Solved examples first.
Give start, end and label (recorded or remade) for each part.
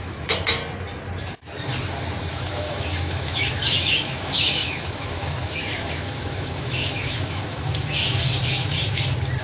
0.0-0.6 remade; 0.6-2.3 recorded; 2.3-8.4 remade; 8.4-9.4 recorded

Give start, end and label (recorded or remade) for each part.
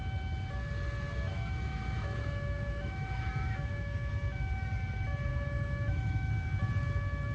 0.0-1.3 recorded; 1.3-4.1 remade; 4.1-5.3 recorded; 5.3-6.3 remade; 6.3-7.3 recorded